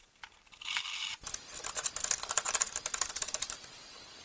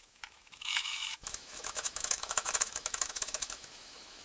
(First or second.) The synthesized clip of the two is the second